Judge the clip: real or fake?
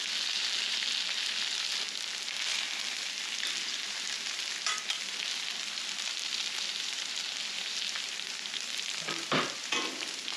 real